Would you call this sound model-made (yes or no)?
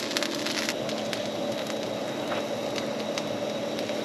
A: no